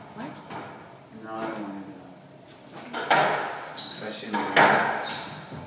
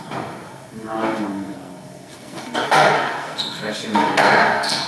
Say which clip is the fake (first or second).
second